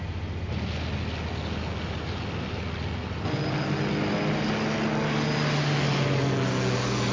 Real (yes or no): yes